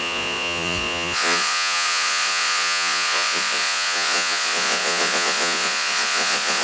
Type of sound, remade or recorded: remade